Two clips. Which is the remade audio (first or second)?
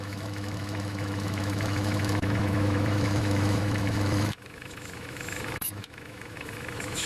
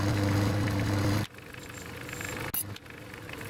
first